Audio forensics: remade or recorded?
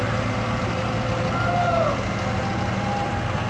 recorded